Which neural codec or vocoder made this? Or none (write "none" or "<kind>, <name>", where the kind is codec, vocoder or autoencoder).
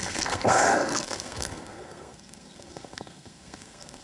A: codec, SNAC